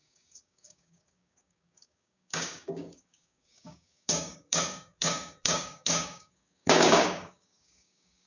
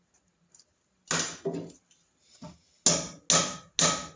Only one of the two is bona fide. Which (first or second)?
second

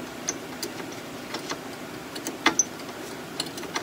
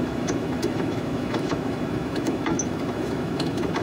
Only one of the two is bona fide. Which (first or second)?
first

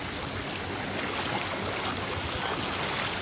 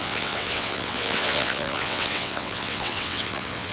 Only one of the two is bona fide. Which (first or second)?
first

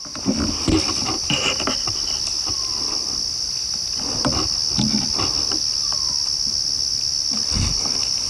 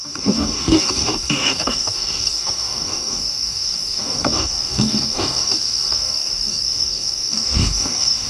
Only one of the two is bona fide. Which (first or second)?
first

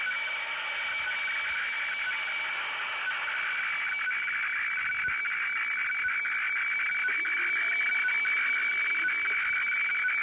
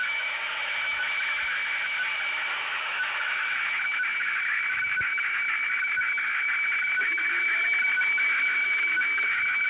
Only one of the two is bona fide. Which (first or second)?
first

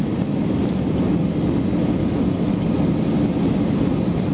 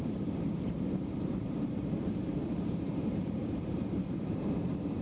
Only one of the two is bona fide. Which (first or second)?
first